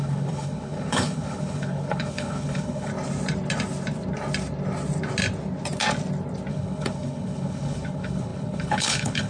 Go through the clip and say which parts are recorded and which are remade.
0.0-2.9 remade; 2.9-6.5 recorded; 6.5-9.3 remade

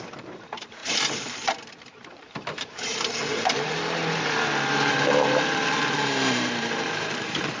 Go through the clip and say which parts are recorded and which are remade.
0.0-7.6 remade

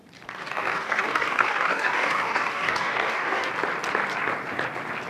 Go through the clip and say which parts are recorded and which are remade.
0.0-0.4 recorded; 0.4-3.5 remade; 3.5-5.1 recorded